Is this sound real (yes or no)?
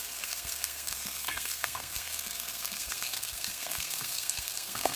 no